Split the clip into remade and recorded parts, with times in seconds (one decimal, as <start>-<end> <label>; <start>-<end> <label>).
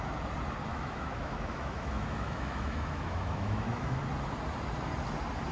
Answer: 0.0-0.7 recorded; 0.7-4.0 remade; 4.0-5.5 recorded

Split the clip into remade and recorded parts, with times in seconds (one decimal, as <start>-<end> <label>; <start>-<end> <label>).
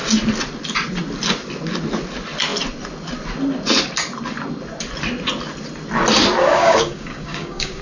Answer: 0.0-6.4 recorded; 6.4-7.8 remade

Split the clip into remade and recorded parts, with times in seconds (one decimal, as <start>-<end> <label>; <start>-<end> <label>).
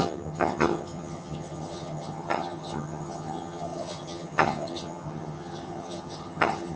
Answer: 0.0-6.8 remade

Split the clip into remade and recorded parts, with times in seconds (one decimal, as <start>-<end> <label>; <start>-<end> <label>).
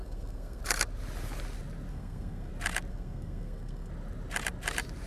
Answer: 0.0-0.6 remade; 0.6-1.9 recorded; 1.9-2.5 remade; 2.5-2.9 recorded; 2.9-3.9 remade; 3.9-5.1 recorded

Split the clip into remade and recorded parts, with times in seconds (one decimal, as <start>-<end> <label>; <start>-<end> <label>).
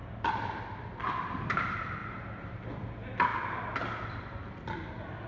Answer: 0.0-5.3 recorded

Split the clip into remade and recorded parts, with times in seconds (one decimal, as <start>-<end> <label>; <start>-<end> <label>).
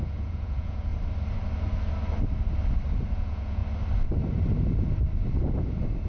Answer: 0.0-0.9 remade; 0.9-3.1 recorded; 3.1-3.6 remade; 3.6-6.1 recorded